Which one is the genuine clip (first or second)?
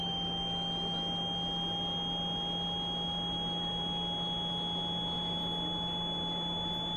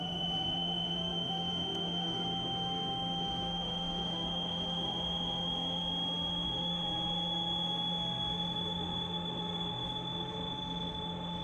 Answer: first